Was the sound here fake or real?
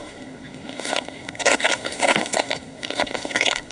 fake